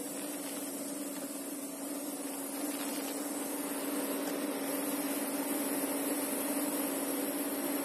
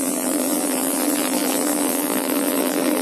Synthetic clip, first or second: second